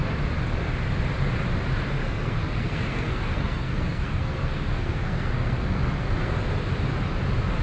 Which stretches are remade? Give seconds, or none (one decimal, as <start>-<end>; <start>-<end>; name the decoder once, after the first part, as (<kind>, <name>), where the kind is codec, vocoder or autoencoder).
2.0-6.3 (codec, SNAC)